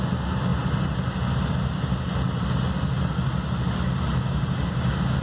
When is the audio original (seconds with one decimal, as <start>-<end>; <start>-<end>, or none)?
0.0-5.2